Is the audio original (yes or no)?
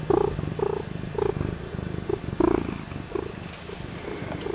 yes